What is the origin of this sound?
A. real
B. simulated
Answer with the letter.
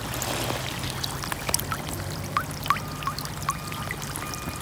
A